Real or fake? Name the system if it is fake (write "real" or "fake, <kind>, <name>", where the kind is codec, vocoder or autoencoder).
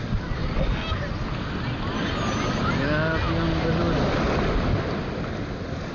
real